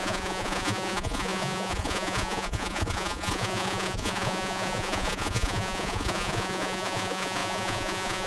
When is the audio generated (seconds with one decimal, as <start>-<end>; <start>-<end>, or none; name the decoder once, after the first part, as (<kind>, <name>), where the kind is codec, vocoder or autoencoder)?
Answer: 0.0-8.3 (vocoder, Vocos)